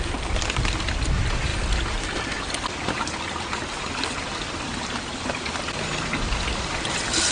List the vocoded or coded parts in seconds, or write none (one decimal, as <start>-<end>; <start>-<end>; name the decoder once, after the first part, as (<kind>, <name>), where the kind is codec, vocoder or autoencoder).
none